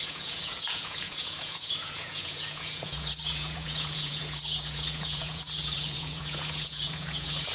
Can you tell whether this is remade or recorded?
remade